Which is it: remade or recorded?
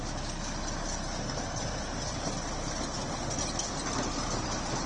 recorded